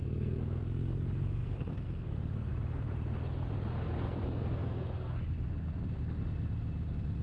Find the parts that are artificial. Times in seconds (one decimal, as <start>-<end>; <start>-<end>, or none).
0.0-2.5; 3.7-5.2